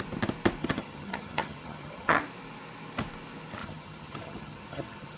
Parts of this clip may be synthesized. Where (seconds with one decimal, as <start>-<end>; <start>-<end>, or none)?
0.6-2.2; 3.6-5.2